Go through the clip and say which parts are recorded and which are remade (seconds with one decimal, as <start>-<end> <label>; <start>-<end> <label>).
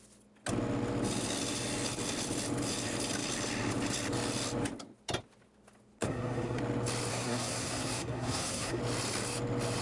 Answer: 0.0-6.0 recorded; 6.0-6.6 remade; 6.6-7.1 recorded; 7.1-8.8 remade; 8.8-9.8 recorded